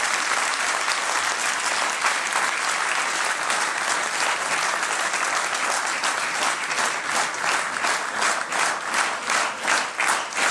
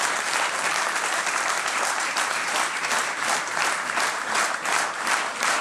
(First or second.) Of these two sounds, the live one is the first